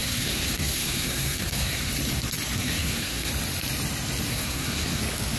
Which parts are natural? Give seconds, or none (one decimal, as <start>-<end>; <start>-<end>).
1.9-2.6; 3.3-4.3; 5.0-5.4